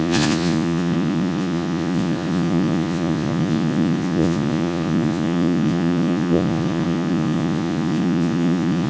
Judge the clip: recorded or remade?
remade